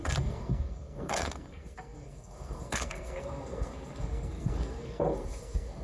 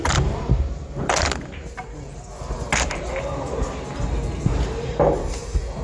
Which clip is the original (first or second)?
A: second